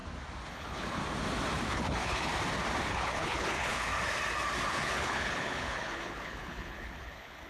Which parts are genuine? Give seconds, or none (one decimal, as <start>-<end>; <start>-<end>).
0.0-0.5; 1.0-1.7; 2.3-2.9; 3.9-4.7

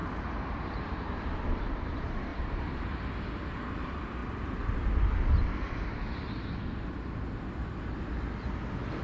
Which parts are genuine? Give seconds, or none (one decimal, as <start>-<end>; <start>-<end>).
1.6-2.3; 2.8-9.0

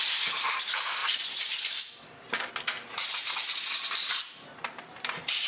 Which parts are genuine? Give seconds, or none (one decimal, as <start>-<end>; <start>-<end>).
3.2-4.1

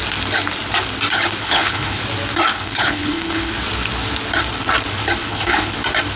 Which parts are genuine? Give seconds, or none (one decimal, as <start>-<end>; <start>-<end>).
0.0-1.4; 2.0-2.5; 3.5-5.2; 5.7-6.2

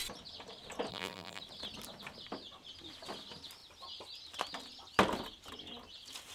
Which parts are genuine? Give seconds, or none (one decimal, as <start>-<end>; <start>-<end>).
0.0-0.9; 1.4-6.3

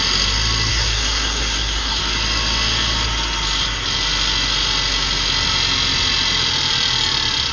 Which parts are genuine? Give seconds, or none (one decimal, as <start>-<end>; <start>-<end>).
0.0-0.7; 2.0-7.5